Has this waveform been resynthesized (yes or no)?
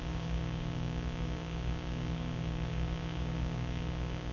yes